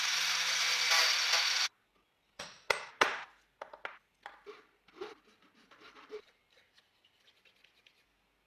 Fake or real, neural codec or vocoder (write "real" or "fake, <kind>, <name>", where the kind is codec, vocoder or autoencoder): real